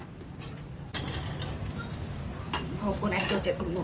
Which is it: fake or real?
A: fake